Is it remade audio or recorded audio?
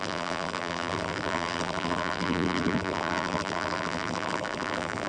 remade